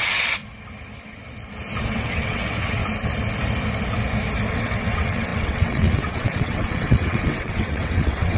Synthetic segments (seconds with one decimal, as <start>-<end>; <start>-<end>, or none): 0.0-0.4; 1.9-2.8; 4.5-8.4